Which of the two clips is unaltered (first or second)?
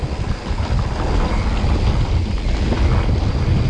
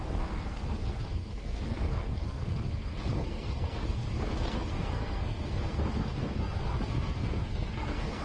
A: first